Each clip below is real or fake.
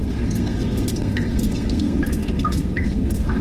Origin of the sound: fake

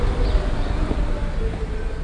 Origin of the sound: real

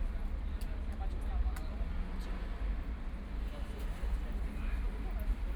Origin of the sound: real